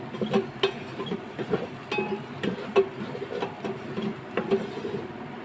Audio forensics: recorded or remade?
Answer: recorded